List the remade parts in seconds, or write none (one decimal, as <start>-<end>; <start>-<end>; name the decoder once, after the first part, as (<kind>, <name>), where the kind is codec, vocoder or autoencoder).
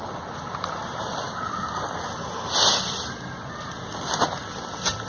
none